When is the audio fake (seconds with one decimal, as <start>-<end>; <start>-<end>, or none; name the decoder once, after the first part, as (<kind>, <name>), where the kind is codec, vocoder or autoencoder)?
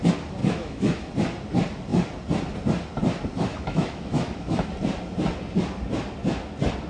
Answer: 0.4-1.1 (autoencoder, DAC-VAE); 3.5-4.7